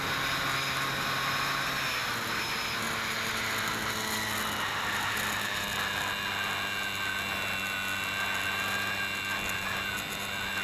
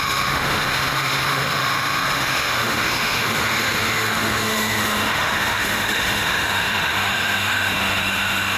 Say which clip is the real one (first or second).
first